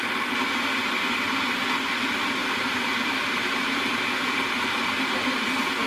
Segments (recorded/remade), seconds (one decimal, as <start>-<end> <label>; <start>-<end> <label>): 0.0-2.4 recorded; 2.4-4.7 remade; 4.7-5.9 recorded